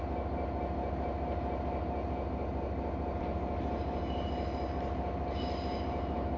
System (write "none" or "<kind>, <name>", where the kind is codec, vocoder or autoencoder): none